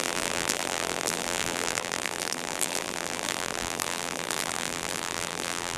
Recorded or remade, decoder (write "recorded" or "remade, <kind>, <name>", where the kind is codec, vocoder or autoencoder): remade, vocoder, BigVGAN v2